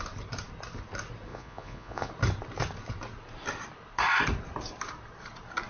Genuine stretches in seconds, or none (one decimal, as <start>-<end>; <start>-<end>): 0.0-1.3; 2.1-5.7